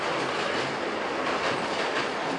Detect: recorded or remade recorded